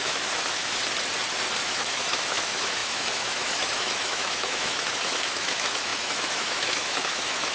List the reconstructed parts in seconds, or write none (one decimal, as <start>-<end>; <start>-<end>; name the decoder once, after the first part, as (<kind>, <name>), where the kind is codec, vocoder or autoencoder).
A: 0.0-0.8 (autoencoder, DAC-VAE); 1.6-7.5